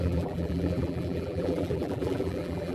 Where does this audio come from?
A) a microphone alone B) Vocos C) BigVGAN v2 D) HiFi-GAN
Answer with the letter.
C